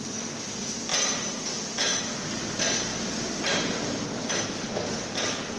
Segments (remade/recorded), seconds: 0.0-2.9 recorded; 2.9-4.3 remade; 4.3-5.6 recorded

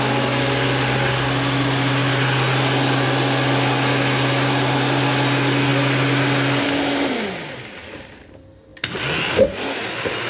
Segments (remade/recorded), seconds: 0.0-10.3 recorded

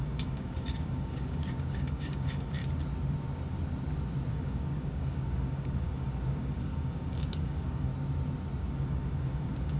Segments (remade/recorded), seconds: 0.0-2.6 remade; 2.6-4.3 recorded; 4.3-7.9 remade; 7.9-8.6 recorded; 8.6-9.8 remade

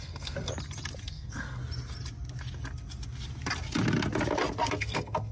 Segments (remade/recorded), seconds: 0.0-0.5 remade; 0.5-1.0 recorded; 1.0-1.6 remade; 1.6-4.8 recorded; 4.8-5.3 remade

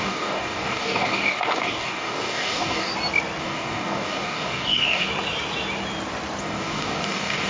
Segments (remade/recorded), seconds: 0.0-2.9 remade; 2.9-3.4 recorded; 3.4-5.1 remade; 5.1-6.4 recorded; 6.4-7.5 remade

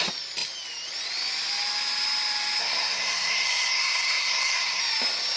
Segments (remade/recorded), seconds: 0.0-2.6 recorded; 2.6-4.8 remade; 4.8-5.4 recorded

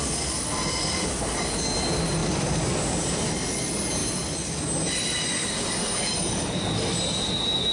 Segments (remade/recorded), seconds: 0.0-2.2 recorded; 2.2-3.3 remade; 3.3-7.7 recorded

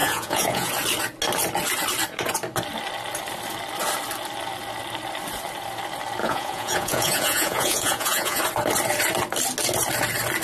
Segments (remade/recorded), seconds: 0.0-0.7 remade; 0.7-6.2 recorded; 6.2-8.4 remade; 8.4-10.4 recorded